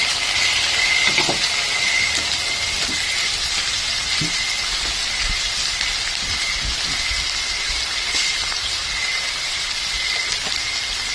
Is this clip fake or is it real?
real